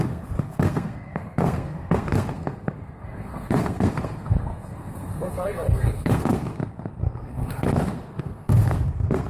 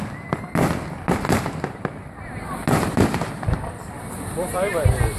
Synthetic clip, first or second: first